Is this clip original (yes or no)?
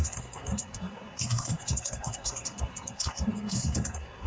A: no